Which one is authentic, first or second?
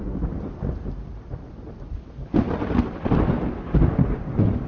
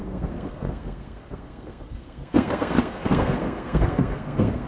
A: first